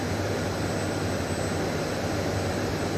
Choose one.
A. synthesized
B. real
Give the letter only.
B